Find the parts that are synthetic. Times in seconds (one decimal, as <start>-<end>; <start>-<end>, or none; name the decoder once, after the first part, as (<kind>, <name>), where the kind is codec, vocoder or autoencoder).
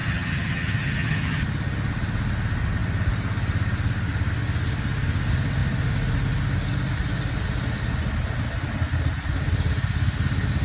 0.0-1.4 (vocoder, HiFi-GAN)